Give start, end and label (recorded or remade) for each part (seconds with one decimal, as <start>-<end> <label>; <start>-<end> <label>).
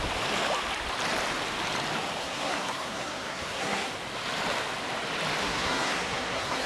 0.0-2.2 recorded; 2.2-3.9 remade; 3.9-5.4 recorded; 5.4-6.7 remade